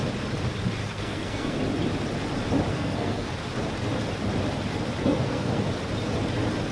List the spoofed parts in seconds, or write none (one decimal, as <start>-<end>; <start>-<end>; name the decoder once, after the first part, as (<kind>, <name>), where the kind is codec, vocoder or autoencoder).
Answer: 0.8-1.6 (codec, SNAC); 2.7-3.3; 5.0-5.6